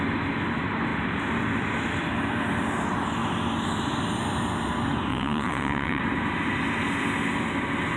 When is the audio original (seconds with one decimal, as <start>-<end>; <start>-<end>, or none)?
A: 0.0-5.1; 6.0-8.0